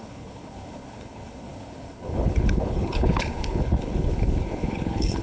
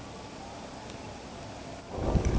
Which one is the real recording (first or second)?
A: second